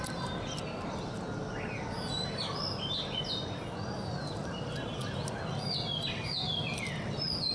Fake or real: real